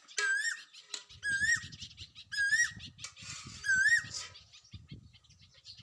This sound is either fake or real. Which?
real